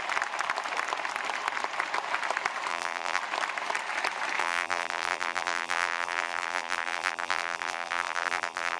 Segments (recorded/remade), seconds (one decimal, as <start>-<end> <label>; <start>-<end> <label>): 0.0-2.7 recorded; 2.7-3.2 remade; 3.2-4.4 recorded; 4.4-8.8 remade